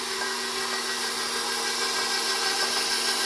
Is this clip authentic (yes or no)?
yes